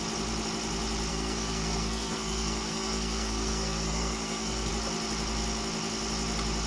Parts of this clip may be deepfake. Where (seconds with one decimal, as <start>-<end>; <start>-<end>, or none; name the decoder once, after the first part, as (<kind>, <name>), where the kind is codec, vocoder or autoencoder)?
1.1-4.7 (codec, SNAC)